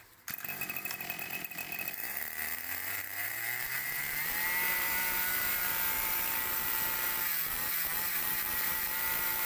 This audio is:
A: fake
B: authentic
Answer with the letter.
A